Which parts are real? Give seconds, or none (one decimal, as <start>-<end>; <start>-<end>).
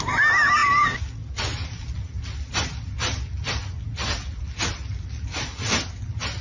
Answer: 0.0-6.4